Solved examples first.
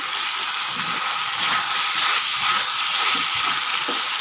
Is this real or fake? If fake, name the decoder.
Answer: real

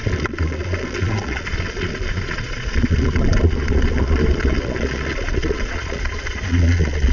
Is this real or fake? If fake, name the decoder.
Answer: fake, vocoder, Vocos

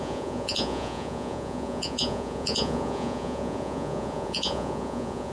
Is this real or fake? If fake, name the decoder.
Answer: fake, vocoder, Vocos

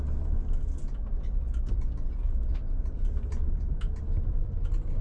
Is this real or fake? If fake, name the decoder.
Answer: real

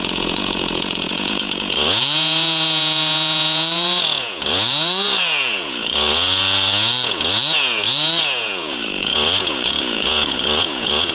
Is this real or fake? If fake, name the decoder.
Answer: fake, vocoder, Vocos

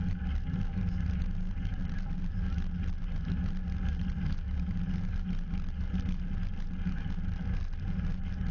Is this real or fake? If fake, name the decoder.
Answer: real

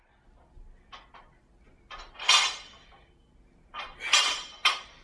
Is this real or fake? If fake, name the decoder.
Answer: real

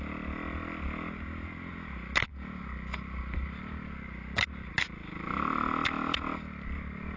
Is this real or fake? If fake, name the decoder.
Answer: real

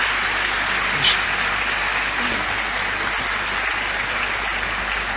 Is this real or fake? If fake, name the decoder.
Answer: real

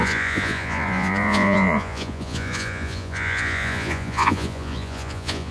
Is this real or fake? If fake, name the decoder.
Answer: fake, vocoder, Vocos